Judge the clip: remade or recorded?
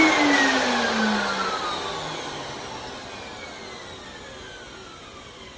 recorded